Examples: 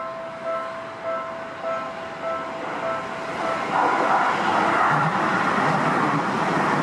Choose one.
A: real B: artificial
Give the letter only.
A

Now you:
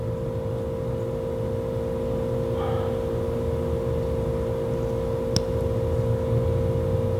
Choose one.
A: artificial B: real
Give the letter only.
B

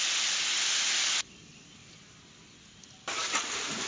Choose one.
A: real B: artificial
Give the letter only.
A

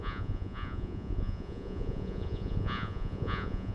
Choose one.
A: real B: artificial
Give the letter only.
B